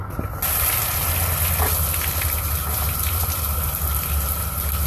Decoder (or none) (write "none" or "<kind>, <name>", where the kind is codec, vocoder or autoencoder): none